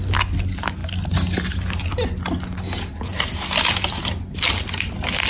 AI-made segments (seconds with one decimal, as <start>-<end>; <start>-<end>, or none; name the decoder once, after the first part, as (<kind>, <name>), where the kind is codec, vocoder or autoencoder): none